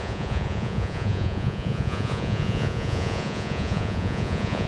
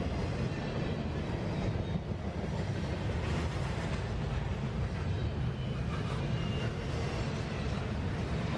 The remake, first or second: first